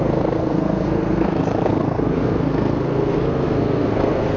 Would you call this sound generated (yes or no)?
yes